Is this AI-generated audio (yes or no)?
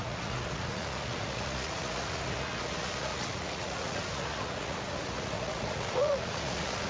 yes